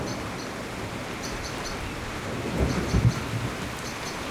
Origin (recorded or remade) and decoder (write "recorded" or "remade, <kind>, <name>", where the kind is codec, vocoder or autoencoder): recorded